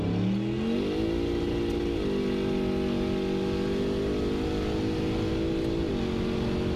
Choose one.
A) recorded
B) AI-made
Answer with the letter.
A